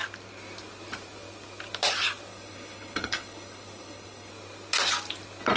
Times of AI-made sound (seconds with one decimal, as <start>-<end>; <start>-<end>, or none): 2.3-4.3